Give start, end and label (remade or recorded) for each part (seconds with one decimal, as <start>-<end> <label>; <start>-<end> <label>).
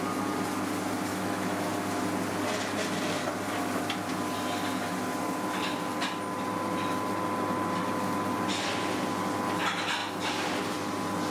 0.0-1.1 recorded; 1.1-1.7 remade; 1.7-11.3 recorded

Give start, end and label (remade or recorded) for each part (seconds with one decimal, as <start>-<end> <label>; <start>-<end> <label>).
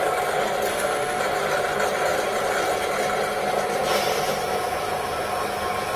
0.0-0.7 recorded; 0.7-1.2 remade; 1.2-6.0 recorded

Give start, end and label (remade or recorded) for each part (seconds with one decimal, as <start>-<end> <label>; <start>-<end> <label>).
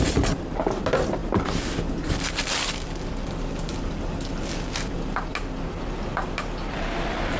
0.0-7.4 recorded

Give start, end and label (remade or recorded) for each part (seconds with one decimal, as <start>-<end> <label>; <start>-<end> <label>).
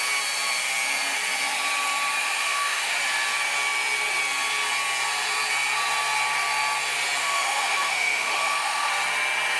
0.0-2.2 recorded; 2.2-2.9 remade; 2.9-7.2 recorded; 7.2-8.9 remade; 8.9-9.6 recorded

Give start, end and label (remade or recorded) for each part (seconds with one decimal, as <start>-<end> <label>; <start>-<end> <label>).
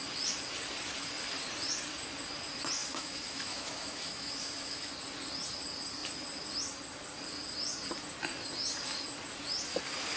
0.0-2.8 recorded; 2.8-4.9 remade; 4.9-10.2 recorded